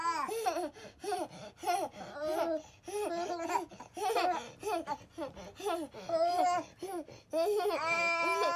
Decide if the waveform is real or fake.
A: real